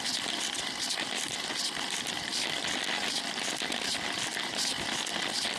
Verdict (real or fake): real